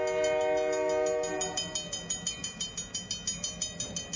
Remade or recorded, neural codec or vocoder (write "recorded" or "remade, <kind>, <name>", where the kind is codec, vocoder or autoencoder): recorded